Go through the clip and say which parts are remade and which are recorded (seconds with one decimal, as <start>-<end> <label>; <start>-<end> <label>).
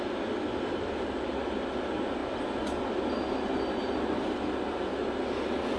0.0-5.8 recorded